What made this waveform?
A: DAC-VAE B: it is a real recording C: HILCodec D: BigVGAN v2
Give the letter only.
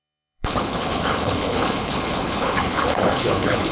C